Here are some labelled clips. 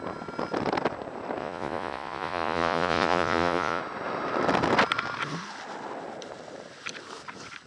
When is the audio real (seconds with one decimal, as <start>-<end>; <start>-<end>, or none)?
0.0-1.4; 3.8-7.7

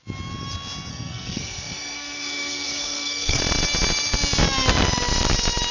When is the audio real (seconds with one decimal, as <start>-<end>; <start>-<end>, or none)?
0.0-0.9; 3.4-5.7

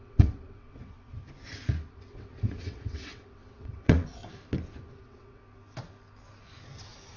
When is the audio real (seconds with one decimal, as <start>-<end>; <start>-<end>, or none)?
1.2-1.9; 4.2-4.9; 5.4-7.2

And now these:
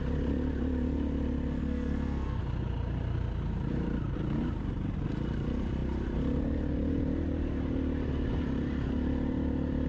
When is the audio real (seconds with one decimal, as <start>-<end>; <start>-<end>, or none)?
0.0-1.6; 2.4-9.9